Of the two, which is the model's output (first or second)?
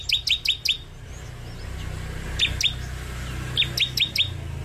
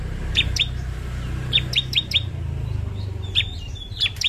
second